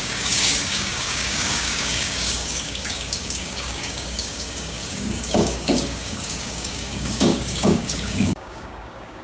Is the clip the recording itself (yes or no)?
no